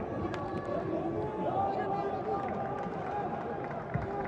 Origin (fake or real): real